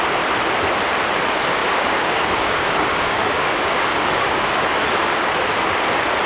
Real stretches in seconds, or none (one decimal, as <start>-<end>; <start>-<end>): 0.0-1.6; 5.4-6.3

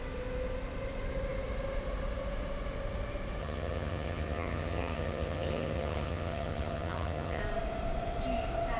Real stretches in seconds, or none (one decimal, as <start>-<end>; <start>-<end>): 0.0-3.4; 7.4-8.8